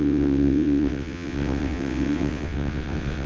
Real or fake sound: fake